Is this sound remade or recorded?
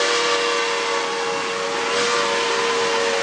recorded